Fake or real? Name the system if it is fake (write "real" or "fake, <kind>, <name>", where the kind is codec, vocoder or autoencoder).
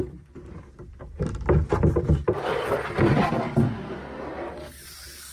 fake, vocoder, BigVGAN v2